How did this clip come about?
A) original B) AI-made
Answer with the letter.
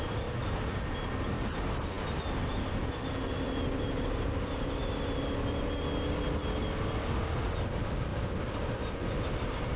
A